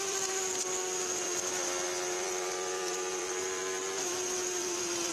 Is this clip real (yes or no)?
no